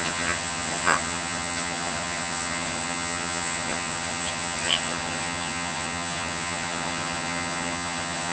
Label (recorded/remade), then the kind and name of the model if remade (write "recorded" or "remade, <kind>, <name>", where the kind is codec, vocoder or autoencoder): remade, vocoder, HiFi-GAN